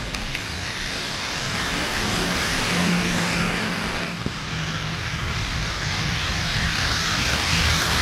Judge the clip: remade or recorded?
remade